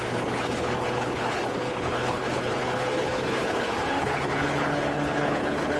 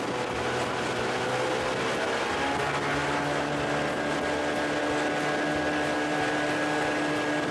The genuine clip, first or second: second